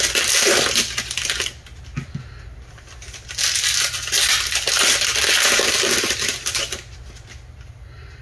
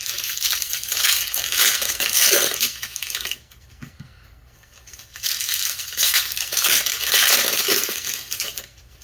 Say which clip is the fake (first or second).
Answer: second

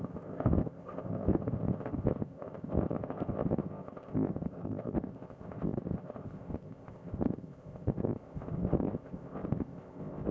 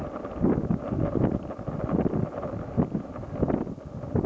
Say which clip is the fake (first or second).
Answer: first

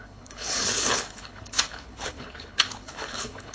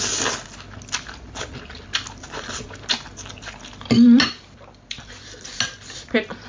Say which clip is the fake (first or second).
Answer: first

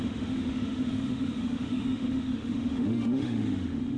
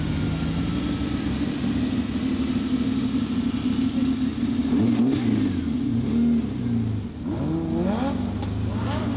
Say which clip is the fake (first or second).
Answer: first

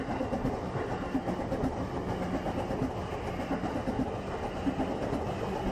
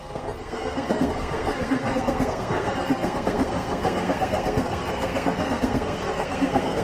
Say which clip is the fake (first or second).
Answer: second